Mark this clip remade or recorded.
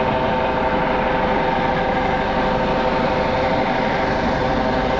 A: recorded